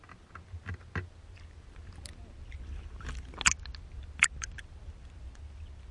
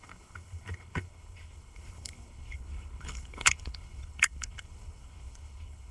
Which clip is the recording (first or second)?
first